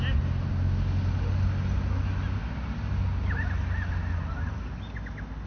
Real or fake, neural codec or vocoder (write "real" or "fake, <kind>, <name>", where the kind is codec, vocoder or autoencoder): real